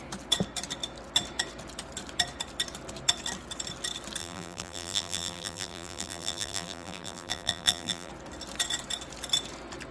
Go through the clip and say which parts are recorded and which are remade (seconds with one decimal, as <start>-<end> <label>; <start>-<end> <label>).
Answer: 0.0-4.2 recorded; 4.2-8.1 remade; 8.1-9.9 recorded

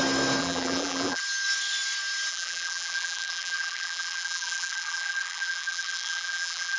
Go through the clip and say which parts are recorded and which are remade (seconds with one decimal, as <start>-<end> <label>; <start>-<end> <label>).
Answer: 0.0-0.4 recorded; 0.4-1.2 remade; 1.2-2.3 recorded; 2.3-6.8 remade

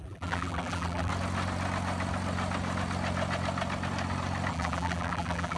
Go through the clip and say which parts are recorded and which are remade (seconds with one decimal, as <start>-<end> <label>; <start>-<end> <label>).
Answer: 0.0-1.1 remade; 1.1-4.5 recorded; 4.5-5.6 remade

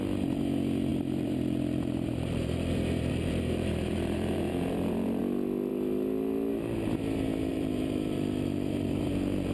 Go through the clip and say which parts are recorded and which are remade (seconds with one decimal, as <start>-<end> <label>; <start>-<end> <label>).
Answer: 0.0-0.9 recorded; 0.9-5.2 remade; 5.2-7.5 recorded; 7.5-9.0 remade; 9.0-9.5 recorded

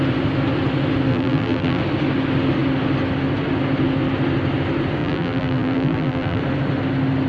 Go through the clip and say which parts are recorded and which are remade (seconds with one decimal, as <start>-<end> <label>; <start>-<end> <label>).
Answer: 0.0-1.1 recorded; 1.1-1.8 remade; 1.8-5.0 recorded; 5.0-6.4 remade; 6.4-7.3 recorded